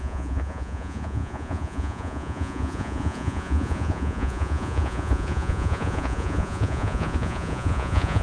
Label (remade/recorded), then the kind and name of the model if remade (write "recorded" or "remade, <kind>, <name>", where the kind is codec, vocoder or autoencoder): remade, vocoder, Vocos